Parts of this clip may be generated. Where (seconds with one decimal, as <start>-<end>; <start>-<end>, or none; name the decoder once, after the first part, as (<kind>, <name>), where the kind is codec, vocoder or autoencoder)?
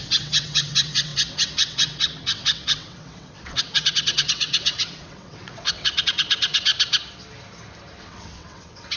0.0-6.7 (vocoder, WaveNeXt); 8.0-9.0